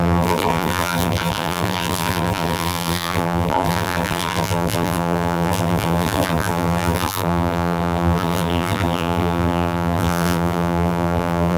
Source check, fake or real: fake